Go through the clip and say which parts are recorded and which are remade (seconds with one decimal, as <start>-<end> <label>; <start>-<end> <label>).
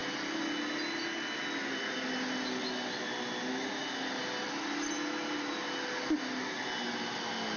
0.0-7.6 recorded